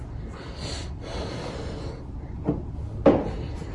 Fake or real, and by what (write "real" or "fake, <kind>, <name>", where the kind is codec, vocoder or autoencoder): real